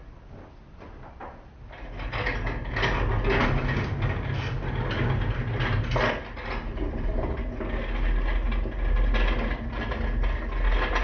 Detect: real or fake real